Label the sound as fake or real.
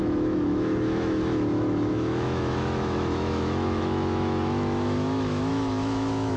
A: fake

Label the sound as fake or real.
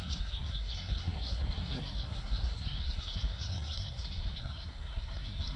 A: fake